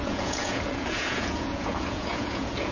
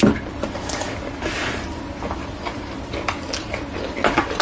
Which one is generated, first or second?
first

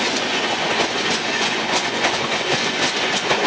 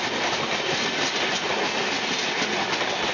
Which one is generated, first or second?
first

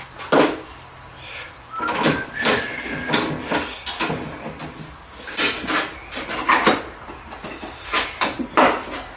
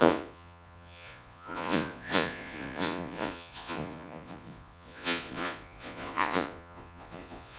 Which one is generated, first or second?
second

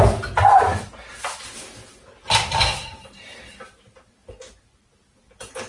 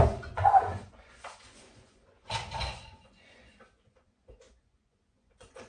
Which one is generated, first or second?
second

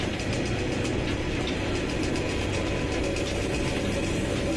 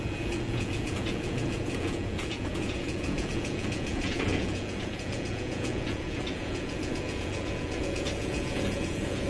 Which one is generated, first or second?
second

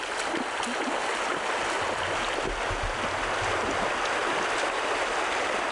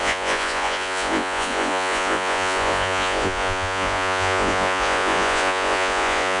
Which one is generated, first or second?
second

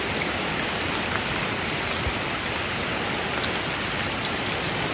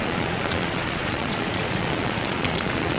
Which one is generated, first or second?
second